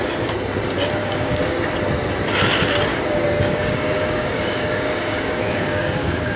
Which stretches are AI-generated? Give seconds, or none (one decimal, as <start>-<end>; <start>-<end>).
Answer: 1.0-1.6; 2.9-6.4